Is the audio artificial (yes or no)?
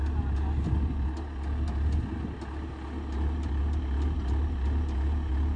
no